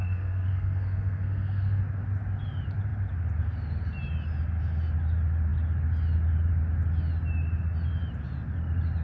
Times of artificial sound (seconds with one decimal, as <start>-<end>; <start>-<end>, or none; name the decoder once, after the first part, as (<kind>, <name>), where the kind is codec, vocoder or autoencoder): 0.0-1.8 (codec, SNAC)